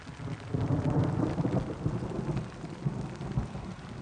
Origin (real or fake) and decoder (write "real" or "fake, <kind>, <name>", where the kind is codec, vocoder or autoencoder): real